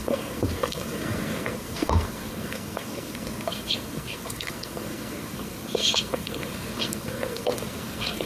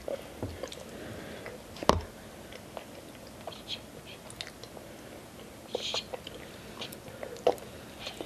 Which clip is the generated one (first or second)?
first